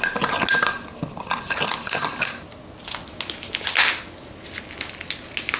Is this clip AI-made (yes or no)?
no